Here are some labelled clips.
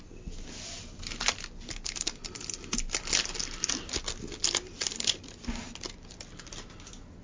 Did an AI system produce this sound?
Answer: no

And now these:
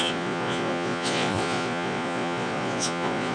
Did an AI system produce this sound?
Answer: yes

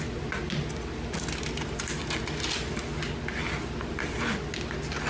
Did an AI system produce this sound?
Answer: no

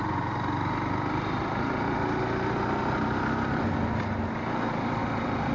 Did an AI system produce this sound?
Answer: no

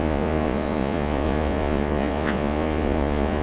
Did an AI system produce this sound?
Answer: yes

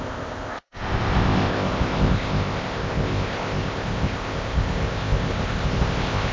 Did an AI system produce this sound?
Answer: yes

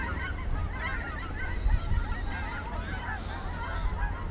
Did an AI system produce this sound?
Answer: no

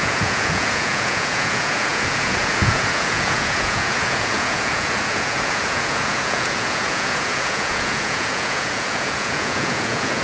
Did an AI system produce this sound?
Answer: yes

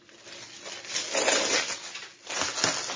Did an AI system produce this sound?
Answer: no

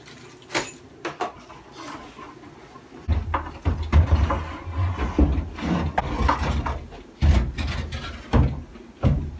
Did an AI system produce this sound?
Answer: no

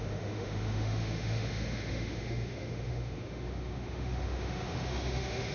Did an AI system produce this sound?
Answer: yes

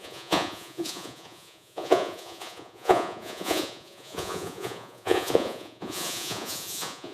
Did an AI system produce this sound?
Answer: yes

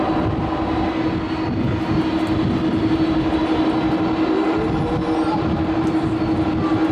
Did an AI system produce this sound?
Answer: no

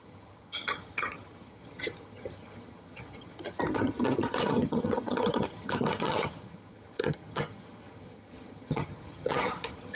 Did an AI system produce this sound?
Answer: yes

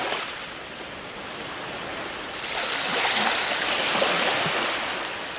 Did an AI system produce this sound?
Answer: yes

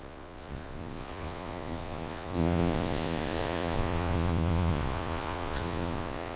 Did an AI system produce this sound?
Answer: yes